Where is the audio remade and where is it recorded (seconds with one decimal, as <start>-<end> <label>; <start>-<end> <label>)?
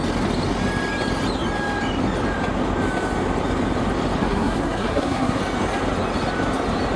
0.0-4.2 recorded; 4.2-5.4 remade; 5.4-7.0 recorded